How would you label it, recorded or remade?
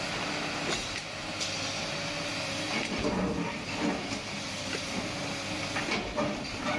recorded